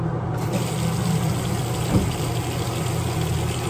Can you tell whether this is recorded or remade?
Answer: recorded